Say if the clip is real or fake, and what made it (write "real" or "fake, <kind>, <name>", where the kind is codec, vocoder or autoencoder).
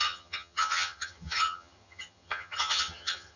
fake, vocoder, HiFi-GAN